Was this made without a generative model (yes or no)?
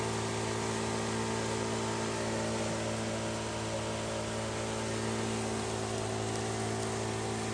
yes